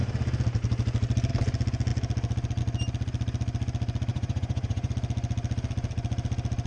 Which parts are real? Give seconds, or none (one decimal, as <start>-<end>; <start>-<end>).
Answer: 0.0-4.1; 4.9-6.7